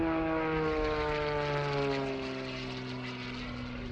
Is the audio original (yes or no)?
yes